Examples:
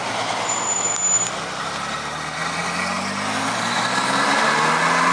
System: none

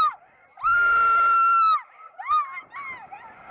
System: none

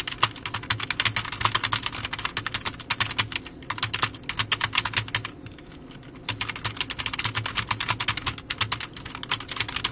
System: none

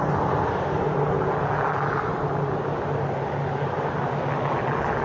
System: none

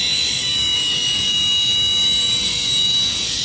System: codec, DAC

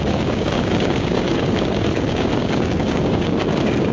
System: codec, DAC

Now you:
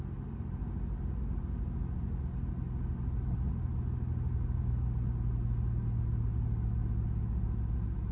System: none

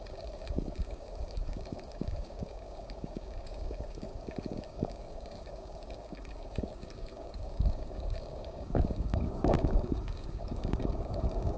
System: codec, DAC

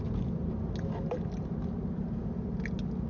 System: none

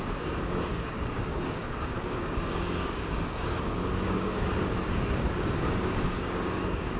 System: codec, DAC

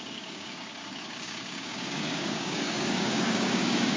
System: codec, DAC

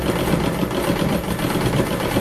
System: none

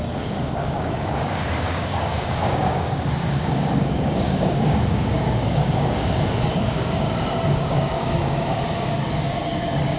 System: codec, DAC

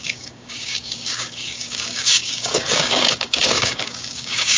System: codec, DAC